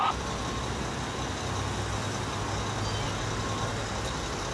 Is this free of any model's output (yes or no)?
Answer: yes